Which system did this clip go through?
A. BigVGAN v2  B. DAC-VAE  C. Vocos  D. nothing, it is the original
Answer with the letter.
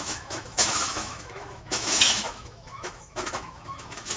B